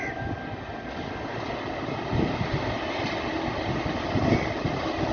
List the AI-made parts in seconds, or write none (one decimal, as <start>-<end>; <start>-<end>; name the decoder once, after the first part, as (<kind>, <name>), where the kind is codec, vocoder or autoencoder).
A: none